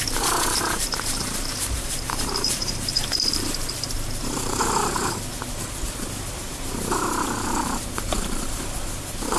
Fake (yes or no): yes